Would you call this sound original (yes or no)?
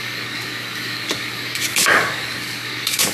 no